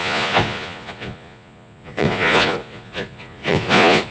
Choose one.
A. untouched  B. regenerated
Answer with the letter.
B